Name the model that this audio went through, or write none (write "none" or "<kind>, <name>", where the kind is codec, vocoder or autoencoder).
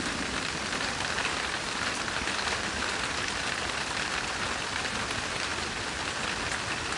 none